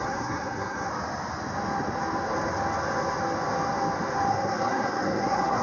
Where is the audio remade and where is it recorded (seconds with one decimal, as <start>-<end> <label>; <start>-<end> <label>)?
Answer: 0.0-0.9 remade; 0.9-4.3 recorded; 4.3-5.6 remade